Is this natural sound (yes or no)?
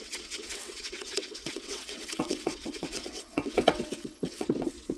no